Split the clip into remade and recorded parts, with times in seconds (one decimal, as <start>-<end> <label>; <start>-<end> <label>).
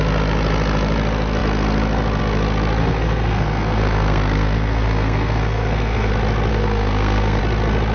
0.0-2.8 recorded; 2.8-6.1 remade; 6.1-6.5 recorded; 6.5-7.4 remade; 7.4-7.9 recorded